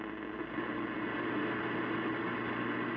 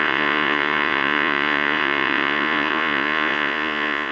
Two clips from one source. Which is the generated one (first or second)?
second